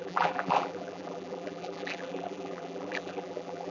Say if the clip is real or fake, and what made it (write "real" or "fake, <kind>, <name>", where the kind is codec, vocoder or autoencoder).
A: fake, vocoder, BigVGAN v2